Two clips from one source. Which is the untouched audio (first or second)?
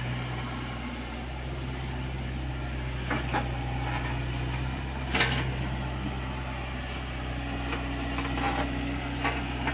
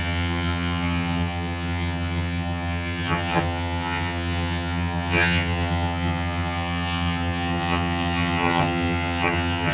first